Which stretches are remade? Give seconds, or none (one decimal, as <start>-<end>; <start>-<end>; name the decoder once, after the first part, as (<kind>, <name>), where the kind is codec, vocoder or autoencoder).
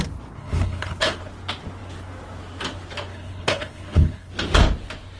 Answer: 0.4-1.2 (codec, HILCodec); 3.1-4.3